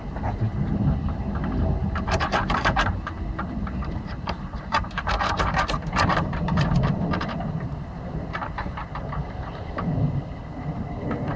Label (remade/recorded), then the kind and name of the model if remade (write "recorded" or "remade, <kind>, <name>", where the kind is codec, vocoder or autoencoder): remade, vocoder, BigVGAN v2